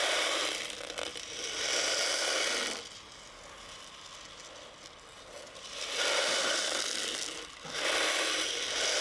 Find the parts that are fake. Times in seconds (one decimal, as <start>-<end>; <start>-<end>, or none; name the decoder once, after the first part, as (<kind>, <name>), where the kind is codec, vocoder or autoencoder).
none